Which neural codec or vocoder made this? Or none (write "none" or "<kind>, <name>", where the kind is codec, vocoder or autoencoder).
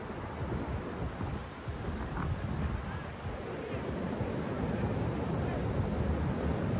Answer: none